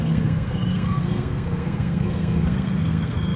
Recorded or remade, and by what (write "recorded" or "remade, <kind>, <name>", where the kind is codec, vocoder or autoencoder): remade, codec, SNAC